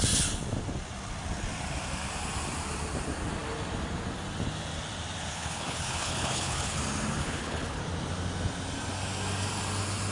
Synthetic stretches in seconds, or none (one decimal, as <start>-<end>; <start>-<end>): 5.3-6.8; 7.2-7.8